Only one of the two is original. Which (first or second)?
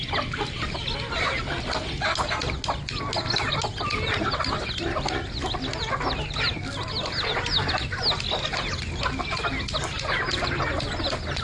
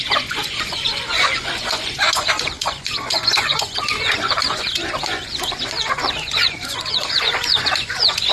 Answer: first